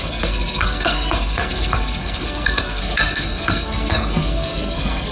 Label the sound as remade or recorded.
remade